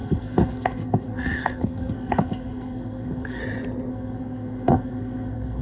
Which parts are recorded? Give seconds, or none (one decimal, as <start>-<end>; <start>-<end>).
3.4-3.9